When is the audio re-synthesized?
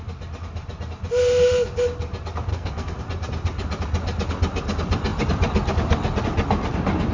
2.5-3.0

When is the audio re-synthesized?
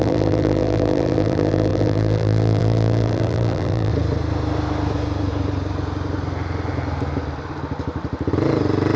0.0-3.9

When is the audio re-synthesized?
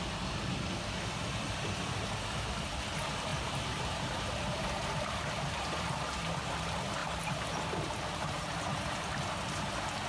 3.3-6.5; 7.0-9.7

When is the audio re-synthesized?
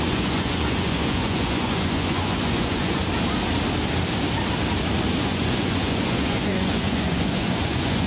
0.0-3.0; 5.2-8.1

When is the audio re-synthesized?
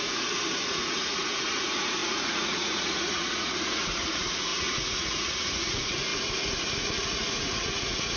0.0-8.2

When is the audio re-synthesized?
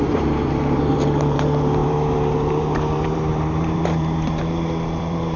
0.0-5.4